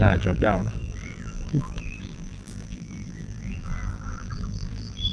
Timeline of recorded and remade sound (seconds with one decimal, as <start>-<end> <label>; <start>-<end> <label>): 0.0-5.1 remade